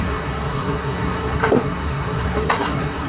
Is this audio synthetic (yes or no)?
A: yes